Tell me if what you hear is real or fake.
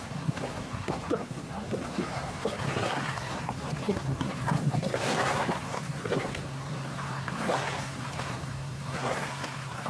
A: fake